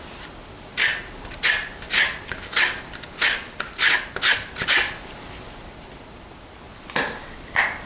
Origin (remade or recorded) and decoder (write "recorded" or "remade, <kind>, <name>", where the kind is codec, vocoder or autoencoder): recorded